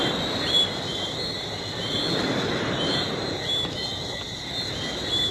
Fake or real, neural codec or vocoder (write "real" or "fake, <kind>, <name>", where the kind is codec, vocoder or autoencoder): real